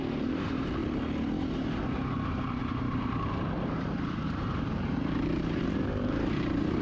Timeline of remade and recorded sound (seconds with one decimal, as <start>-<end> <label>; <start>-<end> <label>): 0.0-0.8 remade; 0.8-2.6 recorded; 2.6-6.8 remade